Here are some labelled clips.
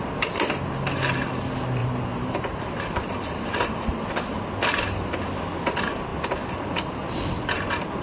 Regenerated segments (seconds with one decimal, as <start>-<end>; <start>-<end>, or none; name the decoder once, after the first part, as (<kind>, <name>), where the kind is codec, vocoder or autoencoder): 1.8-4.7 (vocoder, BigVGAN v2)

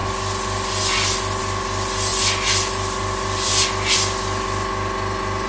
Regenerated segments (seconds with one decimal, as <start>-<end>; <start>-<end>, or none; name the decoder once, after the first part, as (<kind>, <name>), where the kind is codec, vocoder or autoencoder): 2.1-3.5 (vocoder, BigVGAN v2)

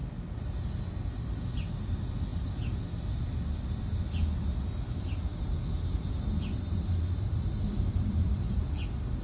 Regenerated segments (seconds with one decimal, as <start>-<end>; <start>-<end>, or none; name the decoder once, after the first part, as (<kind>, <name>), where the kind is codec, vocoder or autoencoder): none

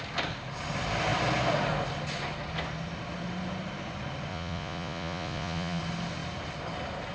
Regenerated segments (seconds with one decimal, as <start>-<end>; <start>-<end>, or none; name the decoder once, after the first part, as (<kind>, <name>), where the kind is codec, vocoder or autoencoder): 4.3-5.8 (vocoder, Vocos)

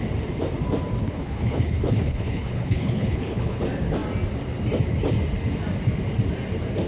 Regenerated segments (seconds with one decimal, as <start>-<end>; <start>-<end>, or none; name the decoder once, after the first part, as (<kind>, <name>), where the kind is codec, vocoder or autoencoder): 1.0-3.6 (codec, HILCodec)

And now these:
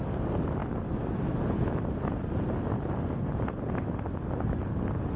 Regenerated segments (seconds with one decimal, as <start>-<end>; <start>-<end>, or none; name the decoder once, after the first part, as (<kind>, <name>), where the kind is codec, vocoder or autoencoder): none

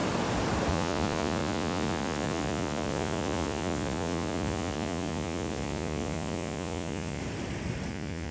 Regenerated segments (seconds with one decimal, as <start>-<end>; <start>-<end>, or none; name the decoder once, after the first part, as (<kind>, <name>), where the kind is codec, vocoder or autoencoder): 0.7-7.2 (vocoder, Vocos); 7.9-8.3